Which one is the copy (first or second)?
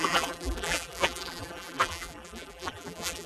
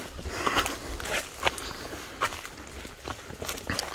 first